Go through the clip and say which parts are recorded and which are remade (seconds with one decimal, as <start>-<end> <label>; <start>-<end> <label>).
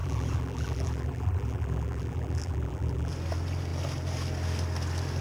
0.0-3.1 remade; 3.1-5.2 recorded